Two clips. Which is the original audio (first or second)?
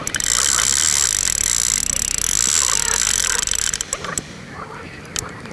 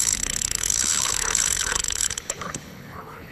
first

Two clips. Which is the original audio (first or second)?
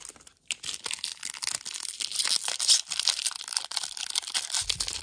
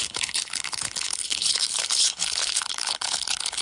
first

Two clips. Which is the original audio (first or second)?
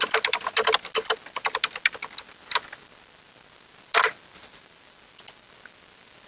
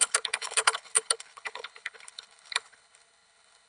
first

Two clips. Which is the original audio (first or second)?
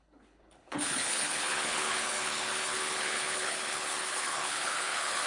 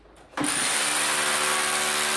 second